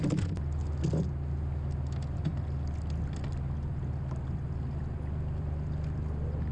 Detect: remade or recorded recorded